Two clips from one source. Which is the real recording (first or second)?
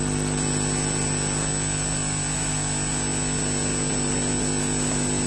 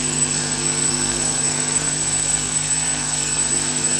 first